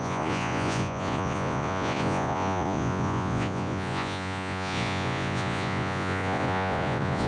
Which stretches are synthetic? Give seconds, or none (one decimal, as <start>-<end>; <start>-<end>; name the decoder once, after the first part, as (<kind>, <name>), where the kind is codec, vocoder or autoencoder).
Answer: 0.0-7.3 (vocoder, Vocos)